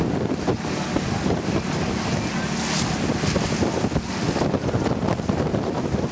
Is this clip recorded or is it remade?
recorded